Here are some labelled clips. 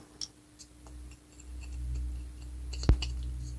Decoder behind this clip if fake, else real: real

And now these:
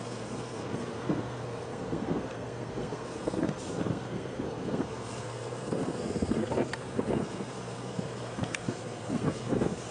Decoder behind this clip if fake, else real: fake, codec, SNAC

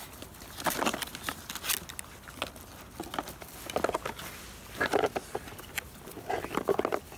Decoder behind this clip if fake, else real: real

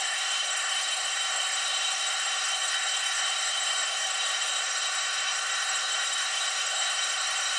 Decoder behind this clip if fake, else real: fake, codec, SNAC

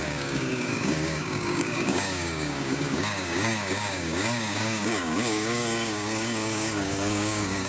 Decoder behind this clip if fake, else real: fake, codec, DAC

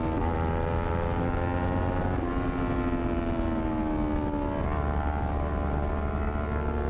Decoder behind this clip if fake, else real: real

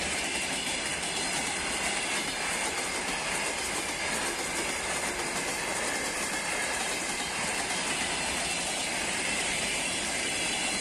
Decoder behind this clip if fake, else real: fake, vocoder, BigVGAN v2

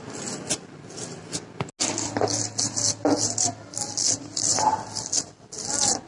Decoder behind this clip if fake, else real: real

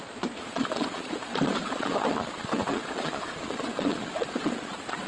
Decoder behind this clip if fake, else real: fake, vocoder, Vocos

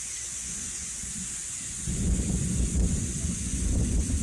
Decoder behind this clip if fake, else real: fake, vocoder, Vocos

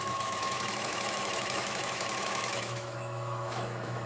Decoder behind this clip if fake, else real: fake, autoencoder, DAC-VAE